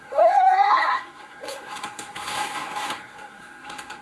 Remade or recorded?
remade